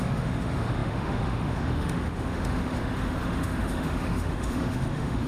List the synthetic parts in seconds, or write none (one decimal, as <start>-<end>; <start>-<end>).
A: 0.0-5.3